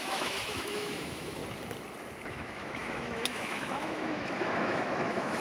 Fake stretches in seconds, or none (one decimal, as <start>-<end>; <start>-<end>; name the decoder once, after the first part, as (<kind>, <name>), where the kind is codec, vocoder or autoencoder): 0.0-1.4 (autoencoder, DAC-VAE); 2.3-5.4